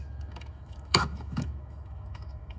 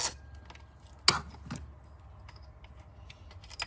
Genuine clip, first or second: second